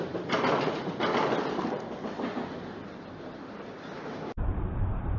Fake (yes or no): yes